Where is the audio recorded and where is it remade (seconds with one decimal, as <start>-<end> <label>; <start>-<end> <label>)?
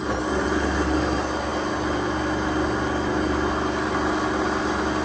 0.0-5.0 recorded